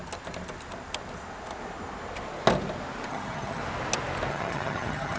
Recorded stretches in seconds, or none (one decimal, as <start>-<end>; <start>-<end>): 0.0-3.1; 3.6-4.3